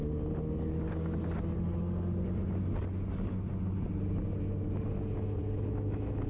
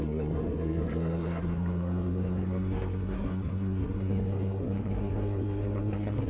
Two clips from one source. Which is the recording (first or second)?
first